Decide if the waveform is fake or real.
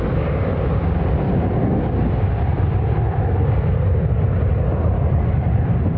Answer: real